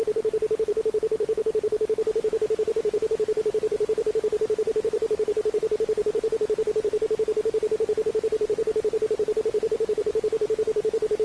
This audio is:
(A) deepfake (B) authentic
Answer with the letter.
A